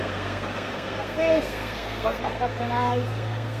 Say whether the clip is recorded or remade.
remade